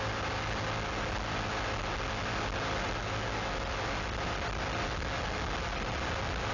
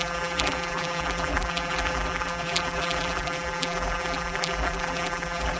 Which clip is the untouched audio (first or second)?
first